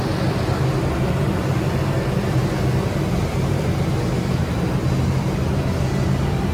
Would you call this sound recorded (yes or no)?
yes